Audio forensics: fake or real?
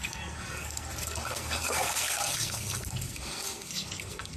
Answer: fake